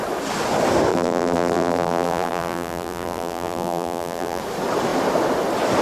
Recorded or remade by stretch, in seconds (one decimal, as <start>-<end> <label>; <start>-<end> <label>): 0.0-0.9 recorded; 0.9-4.4 remade; 4.4-5.8 recorded